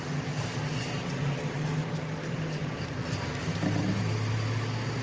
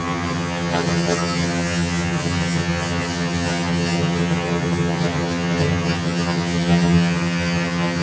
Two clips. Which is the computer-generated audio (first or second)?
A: second